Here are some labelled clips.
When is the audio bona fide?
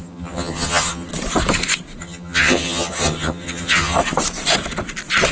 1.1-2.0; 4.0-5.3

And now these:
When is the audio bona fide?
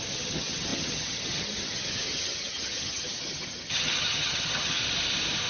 4.8-5.5